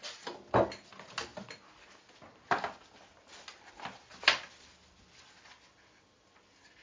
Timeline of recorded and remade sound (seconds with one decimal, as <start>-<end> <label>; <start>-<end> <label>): 0.0-6.8 recorded